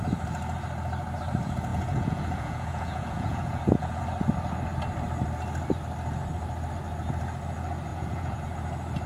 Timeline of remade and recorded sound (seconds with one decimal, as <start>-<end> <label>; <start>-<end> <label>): 0.0-1.7 recorded; 1.7-4.0 remade; 4.0-7.9 recorded; 7.9-8.4 remade; 8.4-9.1 recorded